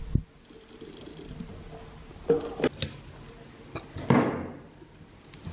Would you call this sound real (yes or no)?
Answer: yes